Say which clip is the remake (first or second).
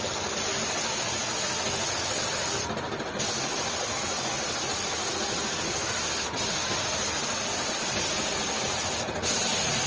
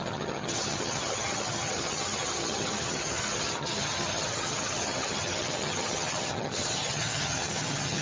second